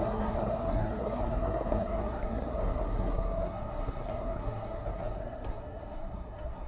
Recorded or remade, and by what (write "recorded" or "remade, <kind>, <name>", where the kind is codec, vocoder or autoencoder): remade, codec, SNAC